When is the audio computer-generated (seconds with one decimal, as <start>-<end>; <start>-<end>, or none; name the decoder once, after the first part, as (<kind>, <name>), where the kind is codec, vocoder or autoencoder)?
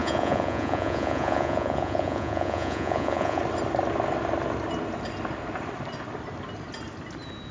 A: 0.0-3.4 (vocoder, Vocos)